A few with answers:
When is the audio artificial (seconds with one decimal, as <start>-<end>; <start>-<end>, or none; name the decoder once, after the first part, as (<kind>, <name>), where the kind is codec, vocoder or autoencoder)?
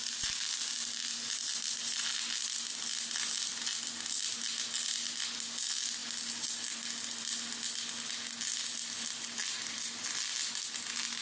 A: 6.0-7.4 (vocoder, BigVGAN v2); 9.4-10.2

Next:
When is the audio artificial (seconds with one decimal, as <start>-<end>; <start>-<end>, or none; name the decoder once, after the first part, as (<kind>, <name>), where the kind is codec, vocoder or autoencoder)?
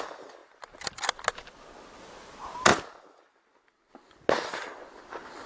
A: none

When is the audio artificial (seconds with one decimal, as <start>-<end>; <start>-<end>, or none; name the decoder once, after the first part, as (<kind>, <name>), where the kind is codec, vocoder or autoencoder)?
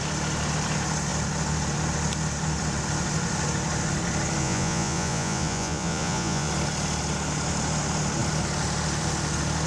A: 4.4-6.5 (vocoder, Vocos)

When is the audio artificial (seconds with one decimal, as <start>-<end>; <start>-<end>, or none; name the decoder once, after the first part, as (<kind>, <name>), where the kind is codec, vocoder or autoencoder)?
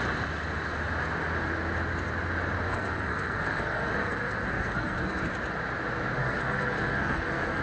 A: 2.7-5.2 (codec, SNAC); 6.2-7.6